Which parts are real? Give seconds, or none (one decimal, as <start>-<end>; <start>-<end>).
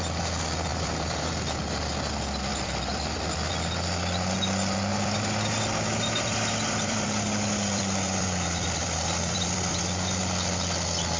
0.0-0.7; 1.3-2.5; 3.5-4.9; 9.8-11.2